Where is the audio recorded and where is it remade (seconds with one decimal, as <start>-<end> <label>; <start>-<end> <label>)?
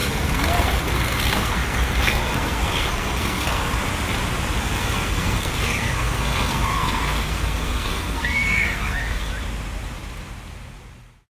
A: 0.0-3.8 remade; 3.8-4.6 recorded; 4.6-9.3 remade; 9.3-11.4 recorded